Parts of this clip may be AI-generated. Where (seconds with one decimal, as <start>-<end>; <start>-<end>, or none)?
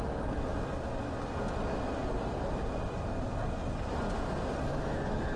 4.7-5.4